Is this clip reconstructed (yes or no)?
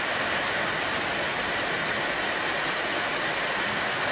no